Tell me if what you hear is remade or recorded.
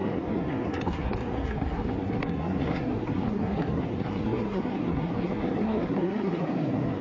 remade